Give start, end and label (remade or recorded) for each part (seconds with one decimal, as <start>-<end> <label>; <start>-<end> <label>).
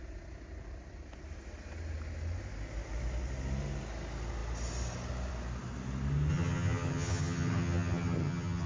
0.0-6.3 recorded; 6.3-8.7 remade